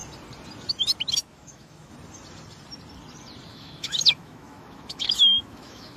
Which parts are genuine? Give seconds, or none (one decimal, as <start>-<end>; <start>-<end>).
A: 0.0-1.2; 1.9-3.5